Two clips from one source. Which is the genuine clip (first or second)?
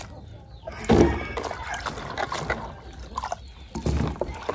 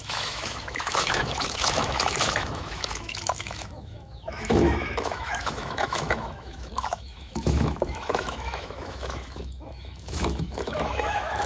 first